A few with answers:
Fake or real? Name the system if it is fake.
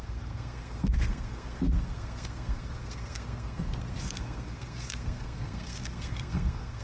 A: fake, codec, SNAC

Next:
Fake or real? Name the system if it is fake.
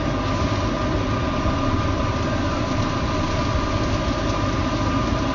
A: real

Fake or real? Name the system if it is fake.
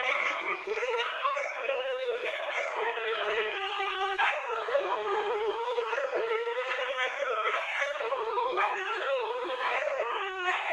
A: fake, codec, SNAC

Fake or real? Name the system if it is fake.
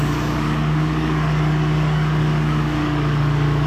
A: fake, codec, DAC